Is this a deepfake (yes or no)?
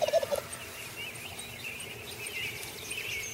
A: no